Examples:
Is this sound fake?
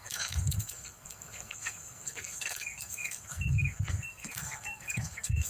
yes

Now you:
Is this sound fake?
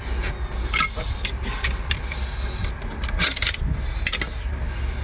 no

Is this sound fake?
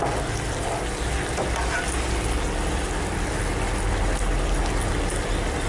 no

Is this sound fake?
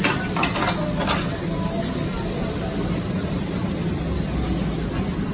no